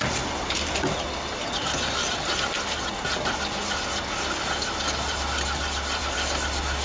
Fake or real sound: real